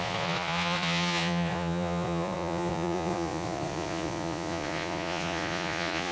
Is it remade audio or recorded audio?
remade